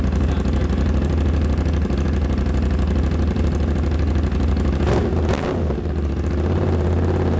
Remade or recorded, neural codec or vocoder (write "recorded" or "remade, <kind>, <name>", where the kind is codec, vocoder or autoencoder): recorded